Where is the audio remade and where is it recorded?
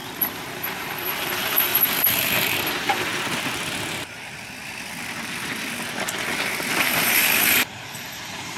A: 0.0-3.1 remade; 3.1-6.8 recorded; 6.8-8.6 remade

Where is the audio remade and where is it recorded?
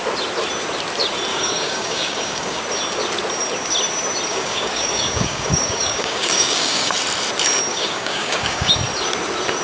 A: 0.0-1.3 recorded; 1.3-2.6 remade; 2.6-4.3 recorded; 4.3-6.9 remade; 6.9-7.7 recorded; 7.7-8.7 remade; 8.7-9.6 recorded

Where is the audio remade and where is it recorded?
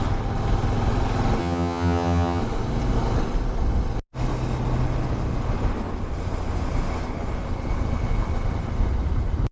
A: 0.0-1.4 recorded; 1.4-2.4 remade; 2.4-9.5 recorded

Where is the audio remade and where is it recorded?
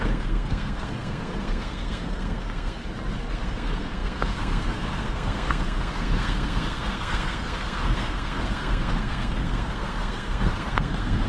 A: 0.0-2.8 remade; 2.8-3.3 recorded; 3.3-11.3 remade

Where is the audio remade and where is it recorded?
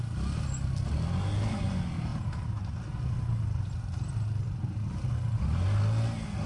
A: 0.0-6.5 recorded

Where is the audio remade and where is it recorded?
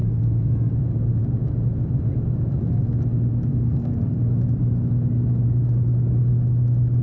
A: 0.0-0.7 remade; 0.7-3.5 recorded; 3.5-4.1 remade; 4.1-7.0 recorded